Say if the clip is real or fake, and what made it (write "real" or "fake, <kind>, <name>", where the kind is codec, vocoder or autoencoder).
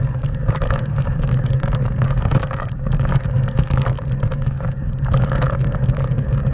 fake, codec, DAC